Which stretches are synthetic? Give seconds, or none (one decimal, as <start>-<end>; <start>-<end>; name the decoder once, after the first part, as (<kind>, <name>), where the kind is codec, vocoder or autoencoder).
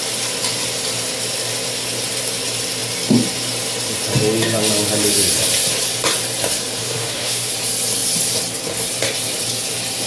6.8-7.5 (autoencoder, DAC-VAE)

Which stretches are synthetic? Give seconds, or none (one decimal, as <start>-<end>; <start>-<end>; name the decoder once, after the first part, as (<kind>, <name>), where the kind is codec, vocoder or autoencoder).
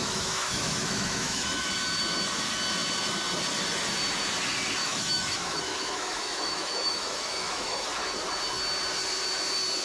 0.0-1.7 (autoencoder, DAC-VAE); 4.8-8.0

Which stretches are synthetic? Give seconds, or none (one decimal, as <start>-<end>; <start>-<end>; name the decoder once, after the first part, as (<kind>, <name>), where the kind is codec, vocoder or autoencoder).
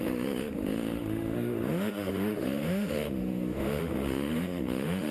0.0-5.1 (autoencoder, DAC-VAE)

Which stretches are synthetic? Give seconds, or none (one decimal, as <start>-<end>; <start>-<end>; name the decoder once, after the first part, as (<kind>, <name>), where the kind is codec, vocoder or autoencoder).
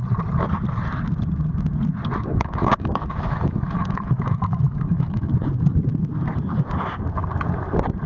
2.3-5.3 (autoencoder, DAC-VAE)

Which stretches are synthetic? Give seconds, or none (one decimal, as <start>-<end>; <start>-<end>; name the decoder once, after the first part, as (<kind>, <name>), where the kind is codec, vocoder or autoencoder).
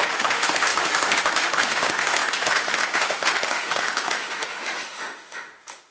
0.0-5.9 (autoencoder, DAC-VAE)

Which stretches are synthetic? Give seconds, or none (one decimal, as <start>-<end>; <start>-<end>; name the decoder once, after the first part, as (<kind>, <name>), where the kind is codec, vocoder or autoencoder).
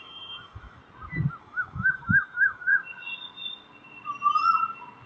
0.0-0.8 (autoencoder, DAC-VAE); 1.4-2.7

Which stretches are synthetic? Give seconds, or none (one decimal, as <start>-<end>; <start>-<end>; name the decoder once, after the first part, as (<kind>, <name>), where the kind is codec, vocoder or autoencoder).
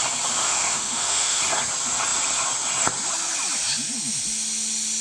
0.4-1.4 (autoencoder, DAC-VAE)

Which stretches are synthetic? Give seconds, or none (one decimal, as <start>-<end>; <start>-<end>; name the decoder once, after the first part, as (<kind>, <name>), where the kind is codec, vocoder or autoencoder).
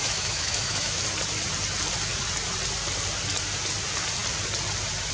0.0-1.0 (autoencoder, DAC-VAE)